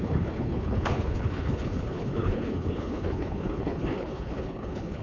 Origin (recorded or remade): remade